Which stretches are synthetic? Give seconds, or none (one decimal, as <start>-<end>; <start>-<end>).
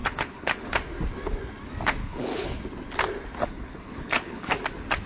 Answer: 0.0-0.7; 2.0-2.6; 3.4-4.5